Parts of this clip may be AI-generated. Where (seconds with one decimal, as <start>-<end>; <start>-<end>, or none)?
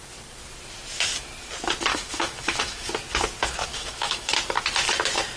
1.9-2.9; 3.7-4.3